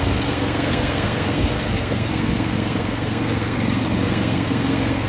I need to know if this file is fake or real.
fake